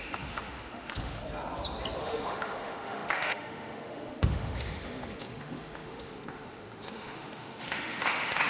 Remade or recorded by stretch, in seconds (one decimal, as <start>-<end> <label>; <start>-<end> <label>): 0.0-1.2 remade; 1.2-2.0 recorded; 2.0-8.5 remade